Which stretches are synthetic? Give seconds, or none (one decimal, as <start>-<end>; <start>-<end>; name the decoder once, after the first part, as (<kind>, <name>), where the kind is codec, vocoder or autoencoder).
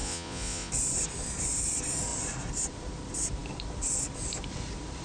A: 0.0-0.7 (vocoder, Vocos)